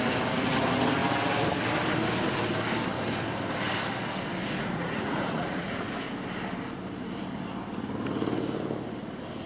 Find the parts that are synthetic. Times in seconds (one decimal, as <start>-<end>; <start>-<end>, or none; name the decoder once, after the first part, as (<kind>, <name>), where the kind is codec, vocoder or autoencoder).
4.4-6.1 (vocoder, Vocos)